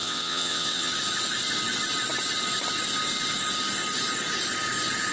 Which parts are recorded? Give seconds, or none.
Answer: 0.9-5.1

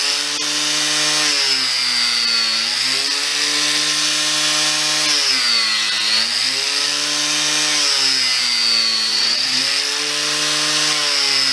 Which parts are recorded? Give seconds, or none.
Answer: 0.0-9.1; 9.6-11.5